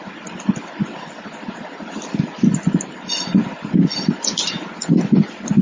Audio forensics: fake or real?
real